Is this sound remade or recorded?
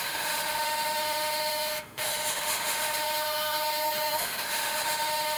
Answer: remade